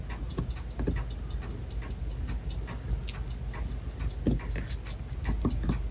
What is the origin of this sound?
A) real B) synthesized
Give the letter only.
A